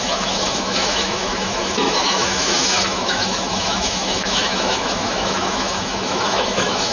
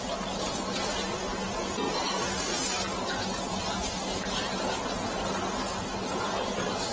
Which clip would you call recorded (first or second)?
second